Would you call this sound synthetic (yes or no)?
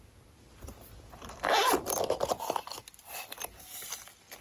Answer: no